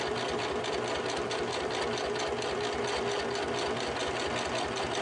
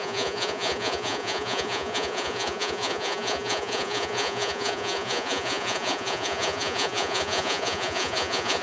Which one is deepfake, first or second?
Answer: second